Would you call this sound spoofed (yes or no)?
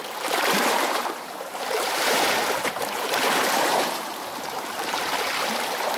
yes